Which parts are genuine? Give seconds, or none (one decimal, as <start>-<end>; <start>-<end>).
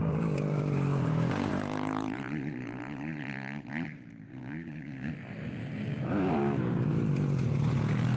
1.5-4.4; 5.1-5.6; 6.9-8.2